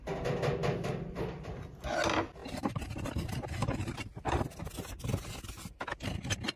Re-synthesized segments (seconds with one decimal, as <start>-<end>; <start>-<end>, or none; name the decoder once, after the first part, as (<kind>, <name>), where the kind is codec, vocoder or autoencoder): 2.4-3.1 (vocoder, BigVGAN v2); 3.6-4.4